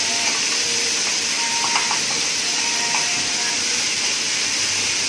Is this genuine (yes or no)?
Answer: yes